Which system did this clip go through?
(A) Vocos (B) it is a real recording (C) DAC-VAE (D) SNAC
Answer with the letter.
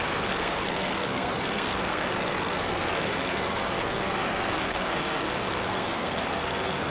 D